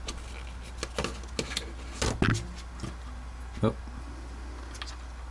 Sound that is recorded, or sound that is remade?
recorded